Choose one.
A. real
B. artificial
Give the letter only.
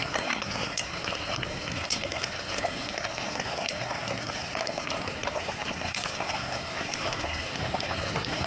B